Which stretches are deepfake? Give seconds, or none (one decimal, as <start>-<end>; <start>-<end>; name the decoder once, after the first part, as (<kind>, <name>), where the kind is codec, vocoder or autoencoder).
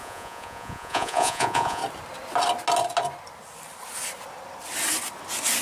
0.0-1.8 (vocoder, Vocos)